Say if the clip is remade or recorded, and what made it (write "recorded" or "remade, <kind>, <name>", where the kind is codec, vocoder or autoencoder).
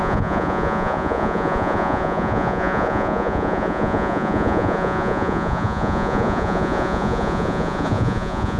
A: remade, vocoder, Vocos